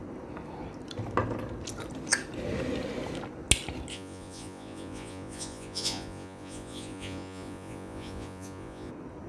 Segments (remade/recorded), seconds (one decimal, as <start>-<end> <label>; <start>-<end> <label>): 0.0-3.9 recorded; 3.9-8.9 remade; 8.9-9.3 recorded